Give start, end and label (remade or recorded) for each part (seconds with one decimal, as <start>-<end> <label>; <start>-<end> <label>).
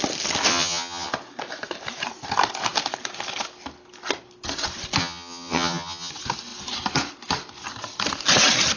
0.0-0.5 recorded; 0.5-1.1 remade; 1.1-5.0 recorded; 5.0-6.1 remade; 6.1-8.8 recorded